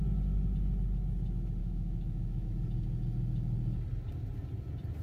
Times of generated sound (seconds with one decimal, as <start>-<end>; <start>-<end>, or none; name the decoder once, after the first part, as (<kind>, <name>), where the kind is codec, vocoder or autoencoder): 1.6-2.5 (autoencoder, DAC-VAE)